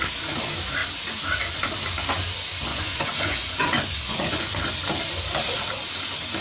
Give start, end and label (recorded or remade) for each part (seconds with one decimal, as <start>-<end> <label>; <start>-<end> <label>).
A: 0.0-2.7 recorded; 2.7-4.6 remade; 4.6-6.4 recorded